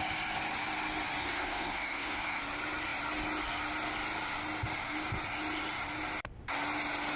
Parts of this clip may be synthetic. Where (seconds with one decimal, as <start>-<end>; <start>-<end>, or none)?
1.2-2.4